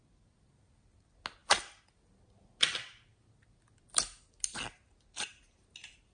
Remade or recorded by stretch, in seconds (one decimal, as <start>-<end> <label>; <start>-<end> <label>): 0.0-6.1 recorded